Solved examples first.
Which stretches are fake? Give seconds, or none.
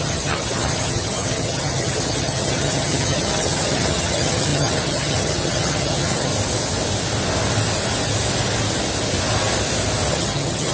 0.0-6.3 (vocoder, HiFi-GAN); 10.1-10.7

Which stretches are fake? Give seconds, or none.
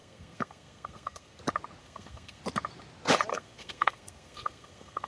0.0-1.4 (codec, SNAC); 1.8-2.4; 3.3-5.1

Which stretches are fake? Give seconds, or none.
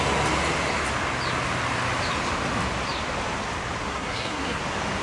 3.8-4.6 (codec, SNAC)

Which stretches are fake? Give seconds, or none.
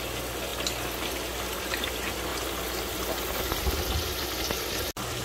none